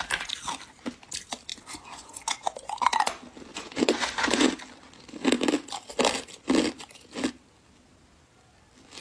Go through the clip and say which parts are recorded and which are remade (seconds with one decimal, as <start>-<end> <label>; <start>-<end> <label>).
0.0-1.5 recorded; 1.5-3.1 remade; 3.1-3.5 recorded; 3.5-4.5 remade; 4.5-9.0 recorded